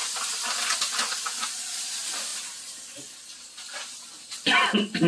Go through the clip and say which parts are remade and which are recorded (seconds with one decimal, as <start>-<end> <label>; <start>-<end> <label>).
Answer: 0.0-5.1 recorded